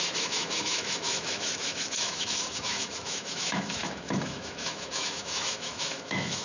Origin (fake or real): fake